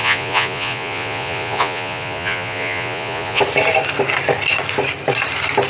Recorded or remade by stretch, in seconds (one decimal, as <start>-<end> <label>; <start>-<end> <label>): 0.0-3.4 remade; 3.4-5.7 recorded